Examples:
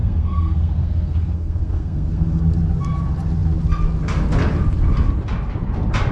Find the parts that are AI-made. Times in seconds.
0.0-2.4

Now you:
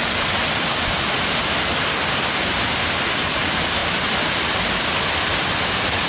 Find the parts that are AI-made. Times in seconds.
none

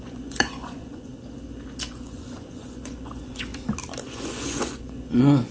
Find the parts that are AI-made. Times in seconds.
0.0-1.1; 1.9-3.5; 4.1-5.5

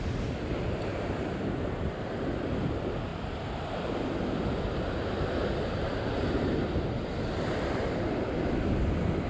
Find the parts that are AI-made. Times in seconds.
none

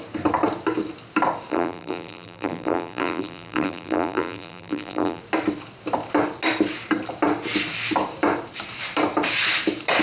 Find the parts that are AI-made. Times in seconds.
1.5-5.2

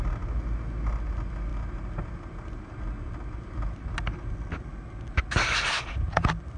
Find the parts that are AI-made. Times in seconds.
none

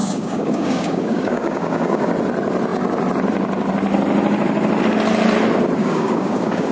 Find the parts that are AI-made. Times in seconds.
0.0-2.1; 5.8-6.7

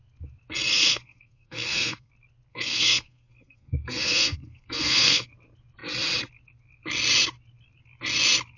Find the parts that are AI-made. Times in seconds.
0.7-2.1; 2.5-5.3